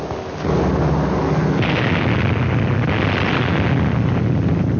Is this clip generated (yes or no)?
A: no